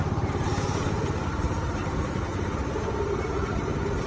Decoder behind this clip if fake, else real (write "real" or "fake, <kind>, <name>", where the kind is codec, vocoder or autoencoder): fake, vocoder, BigVGAN v2